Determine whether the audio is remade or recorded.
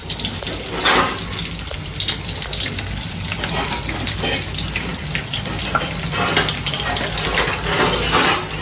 recorded